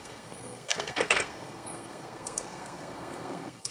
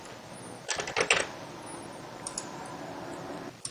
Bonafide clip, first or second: second